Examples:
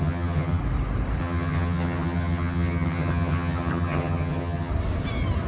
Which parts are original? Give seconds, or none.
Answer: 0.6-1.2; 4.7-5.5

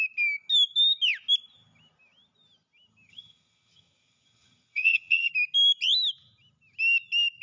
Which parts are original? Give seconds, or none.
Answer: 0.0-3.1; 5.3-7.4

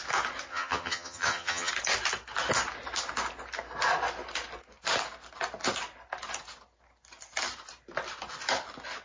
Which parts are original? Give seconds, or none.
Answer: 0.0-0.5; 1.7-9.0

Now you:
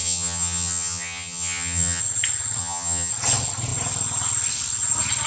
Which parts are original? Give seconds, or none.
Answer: 2.0-2.6; 3.1-5.3

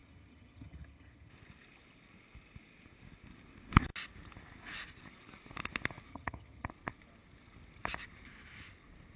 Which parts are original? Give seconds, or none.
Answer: 1.3-6.1; 6.7-9.2

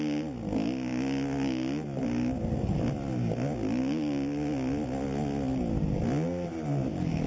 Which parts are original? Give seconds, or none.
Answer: 0.0-7.3

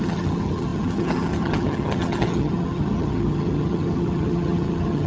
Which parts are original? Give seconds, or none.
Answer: none